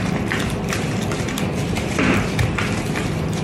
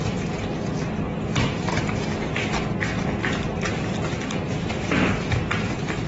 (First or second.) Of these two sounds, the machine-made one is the first